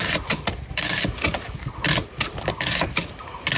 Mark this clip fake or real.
real